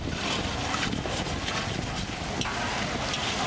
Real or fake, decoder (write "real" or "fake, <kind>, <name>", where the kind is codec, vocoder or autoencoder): real